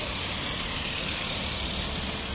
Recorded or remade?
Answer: recorded